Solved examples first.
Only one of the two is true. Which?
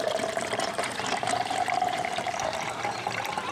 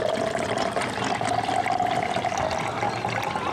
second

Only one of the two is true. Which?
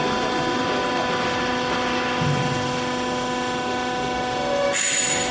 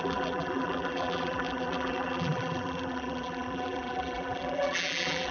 first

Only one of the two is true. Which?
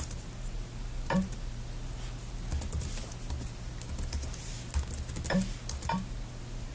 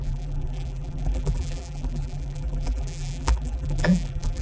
first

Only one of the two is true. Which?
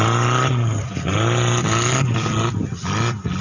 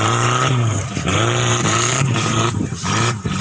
first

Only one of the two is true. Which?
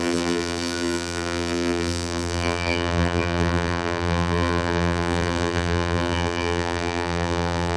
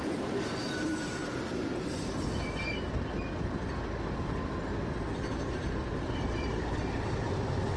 second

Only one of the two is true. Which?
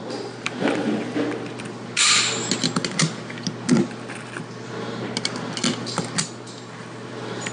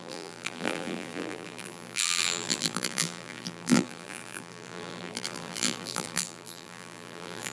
first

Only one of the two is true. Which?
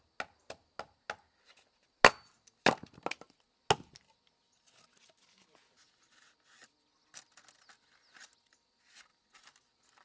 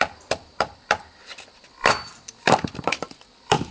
first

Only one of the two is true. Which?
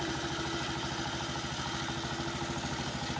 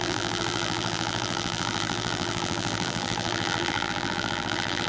first